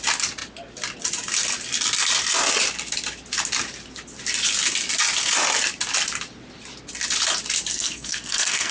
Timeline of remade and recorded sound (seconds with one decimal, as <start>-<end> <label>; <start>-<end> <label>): 0.0-7.7 recorded; 7.7-8.7 remade